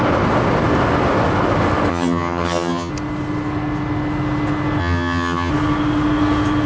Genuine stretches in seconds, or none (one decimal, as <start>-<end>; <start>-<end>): 0.0-1.9; 2.9-4.8; 5.5-6.7